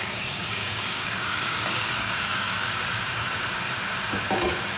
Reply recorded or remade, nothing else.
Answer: remade